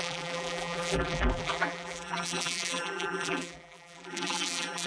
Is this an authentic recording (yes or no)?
no